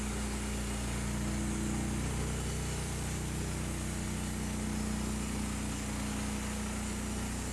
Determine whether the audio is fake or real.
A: real